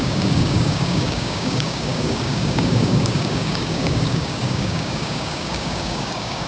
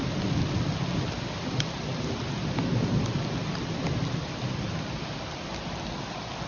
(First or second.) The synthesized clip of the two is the first